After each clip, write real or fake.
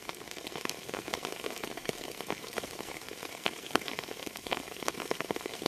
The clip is fake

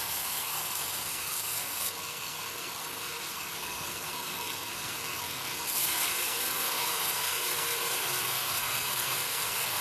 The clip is fake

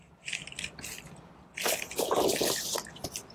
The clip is real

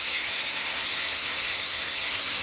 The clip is fake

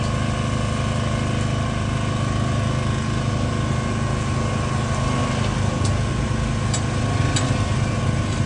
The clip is real